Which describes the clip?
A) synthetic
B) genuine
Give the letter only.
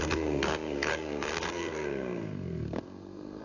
A